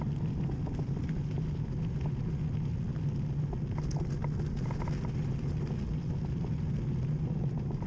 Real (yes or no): yes